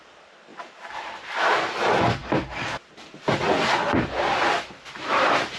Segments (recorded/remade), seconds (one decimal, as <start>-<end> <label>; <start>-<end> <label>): 0.0-5.6 recorded

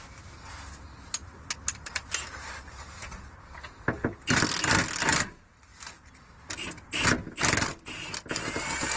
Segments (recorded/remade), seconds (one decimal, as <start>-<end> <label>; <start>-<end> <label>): 0.0-5.7 recorded; 5.7-6.5 remade; 6.5-9.0 recorded

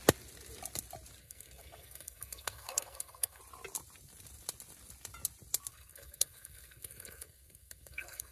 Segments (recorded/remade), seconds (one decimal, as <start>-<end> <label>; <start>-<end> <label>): 0.0-1.2 recorded; 1.2-3.4 remade; 3.4-5.7 recorded; 5.7-8.3 remade

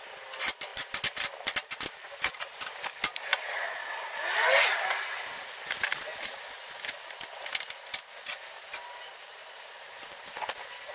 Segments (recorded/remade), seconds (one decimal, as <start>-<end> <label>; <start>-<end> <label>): 0.0-10.9 recorded

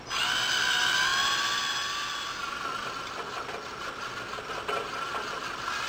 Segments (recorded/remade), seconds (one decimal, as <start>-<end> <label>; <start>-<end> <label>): 0.0-5.9 recorded

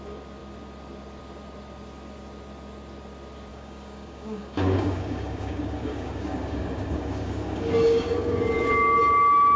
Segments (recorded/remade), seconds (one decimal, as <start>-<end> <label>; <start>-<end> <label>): 0.0-3.5 recorded; 3.5-8.7 remade; 8.7-9.6 recorded

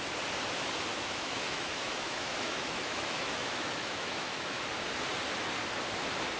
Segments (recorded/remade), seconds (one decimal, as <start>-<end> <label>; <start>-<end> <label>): 0.0-0.9 recorded; 0.9-4.6 remade; 4.6-6.4 recorded

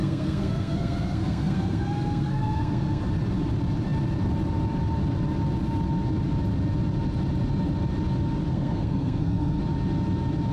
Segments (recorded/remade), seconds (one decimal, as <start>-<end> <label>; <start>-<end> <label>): 0.0-3.0 remade; 3.0-8.5 recorded; 8.5-9.6 remade; 9.6-10.5 recorded